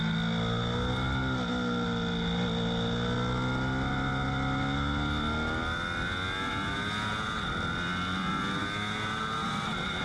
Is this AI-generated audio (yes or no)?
no